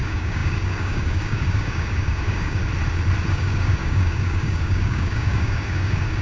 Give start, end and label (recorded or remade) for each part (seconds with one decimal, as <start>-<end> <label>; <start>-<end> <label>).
0.0-2.6 remade; 2.6-3.3 recorded; 3.3-6.2 remade